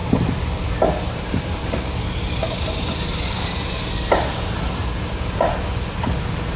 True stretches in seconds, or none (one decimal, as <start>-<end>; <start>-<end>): 0.6-1.6; 3.9-6.6